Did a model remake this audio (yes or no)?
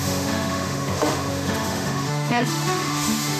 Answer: yes